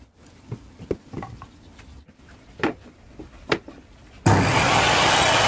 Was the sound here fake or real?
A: real